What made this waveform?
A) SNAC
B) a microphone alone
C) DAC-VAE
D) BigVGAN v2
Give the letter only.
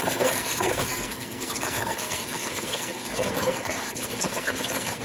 A